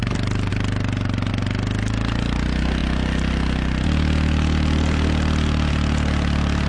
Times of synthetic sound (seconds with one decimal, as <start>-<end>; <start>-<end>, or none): none